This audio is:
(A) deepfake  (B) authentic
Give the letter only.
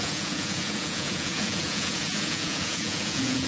A